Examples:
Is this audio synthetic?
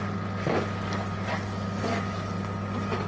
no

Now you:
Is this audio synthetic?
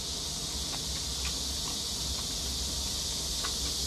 no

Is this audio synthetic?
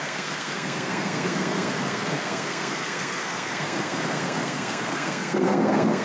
yes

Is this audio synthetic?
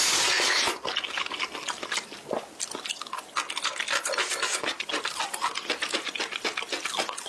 no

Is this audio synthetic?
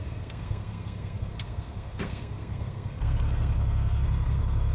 yes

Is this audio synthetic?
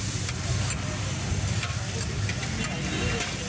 no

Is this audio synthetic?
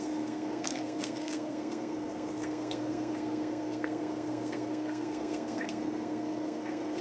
yes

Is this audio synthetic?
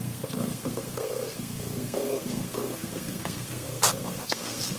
yes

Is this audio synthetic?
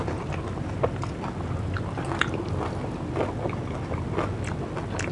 no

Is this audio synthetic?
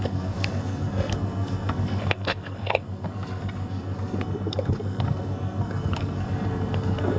yes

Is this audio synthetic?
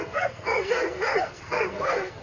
yes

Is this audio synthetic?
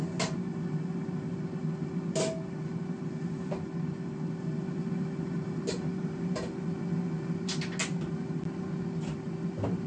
no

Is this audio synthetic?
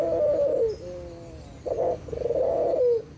no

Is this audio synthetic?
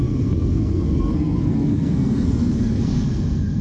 yes